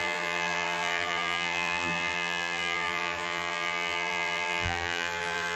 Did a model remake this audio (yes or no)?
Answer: yes